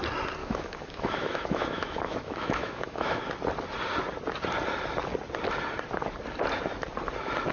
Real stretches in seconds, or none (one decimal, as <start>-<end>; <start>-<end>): 0.0-0.4; 3.2-7.5